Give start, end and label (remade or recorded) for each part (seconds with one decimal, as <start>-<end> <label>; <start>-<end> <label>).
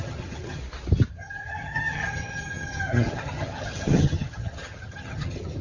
0.0-0.6 remade; 0.6-1.1 recorded; 1.1-5.6 remade